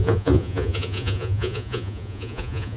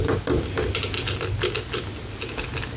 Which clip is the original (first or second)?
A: second